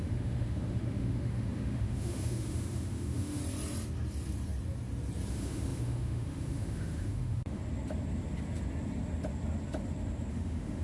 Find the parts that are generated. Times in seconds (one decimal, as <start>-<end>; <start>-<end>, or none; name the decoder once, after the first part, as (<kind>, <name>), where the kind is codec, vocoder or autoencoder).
0.0-3.4 (autoencoder, DAC-VAE); 5.3-7.6; 10.3-10.8